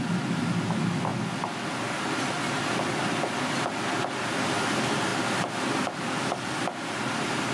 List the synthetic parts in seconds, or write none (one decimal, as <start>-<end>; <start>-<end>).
none